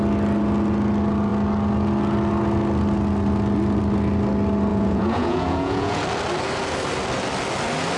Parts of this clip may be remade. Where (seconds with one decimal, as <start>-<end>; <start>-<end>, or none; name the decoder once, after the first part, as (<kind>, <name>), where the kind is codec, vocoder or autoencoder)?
4.7-6.0 (vocoder, Vocos)